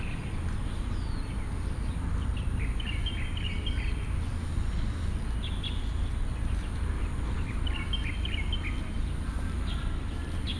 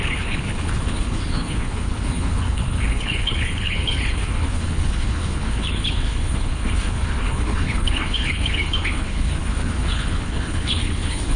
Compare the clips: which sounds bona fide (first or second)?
first